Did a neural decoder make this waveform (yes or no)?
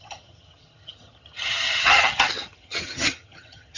yes